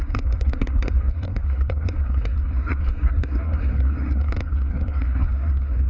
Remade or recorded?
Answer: remade